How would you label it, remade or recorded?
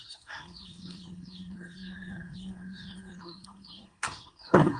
remade